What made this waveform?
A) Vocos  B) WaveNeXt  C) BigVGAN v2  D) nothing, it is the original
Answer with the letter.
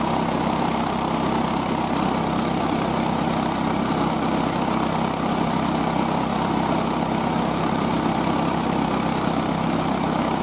D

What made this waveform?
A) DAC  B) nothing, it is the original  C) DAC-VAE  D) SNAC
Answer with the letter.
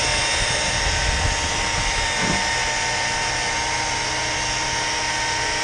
B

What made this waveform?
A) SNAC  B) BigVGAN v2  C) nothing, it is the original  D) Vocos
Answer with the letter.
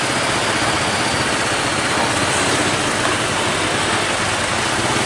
C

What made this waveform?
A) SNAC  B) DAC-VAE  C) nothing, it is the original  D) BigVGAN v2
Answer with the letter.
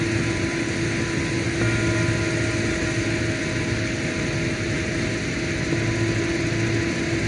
C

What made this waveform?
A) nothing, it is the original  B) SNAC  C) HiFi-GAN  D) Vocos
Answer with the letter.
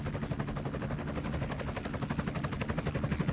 A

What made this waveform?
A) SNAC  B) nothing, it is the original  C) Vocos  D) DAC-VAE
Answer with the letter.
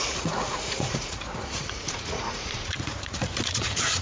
C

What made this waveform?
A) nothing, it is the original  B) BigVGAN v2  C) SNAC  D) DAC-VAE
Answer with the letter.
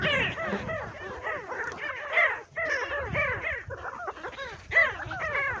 A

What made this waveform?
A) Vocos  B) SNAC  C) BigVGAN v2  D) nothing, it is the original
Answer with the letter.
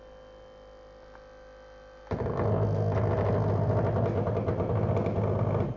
D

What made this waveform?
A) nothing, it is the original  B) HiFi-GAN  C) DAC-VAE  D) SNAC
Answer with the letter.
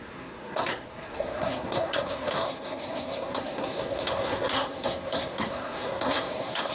D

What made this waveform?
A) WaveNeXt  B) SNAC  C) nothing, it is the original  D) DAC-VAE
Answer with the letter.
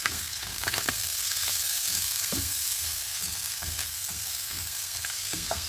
B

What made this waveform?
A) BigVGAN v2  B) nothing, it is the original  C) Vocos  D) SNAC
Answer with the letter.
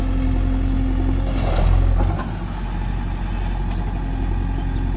B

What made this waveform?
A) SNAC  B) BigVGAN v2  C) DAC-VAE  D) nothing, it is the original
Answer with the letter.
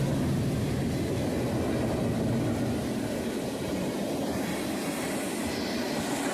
D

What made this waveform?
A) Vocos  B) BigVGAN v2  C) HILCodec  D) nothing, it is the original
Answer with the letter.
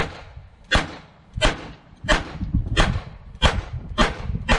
B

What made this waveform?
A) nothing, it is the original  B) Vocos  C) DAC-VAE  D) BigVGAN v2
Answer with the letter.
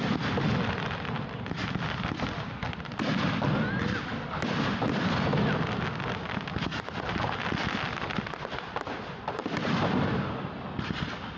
A